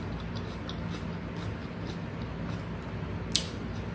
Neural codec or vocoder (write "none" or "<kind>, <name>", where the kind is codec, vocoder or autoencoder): none